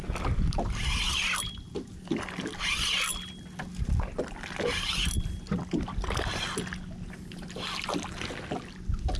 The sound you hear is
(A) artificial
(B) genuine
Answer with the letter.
B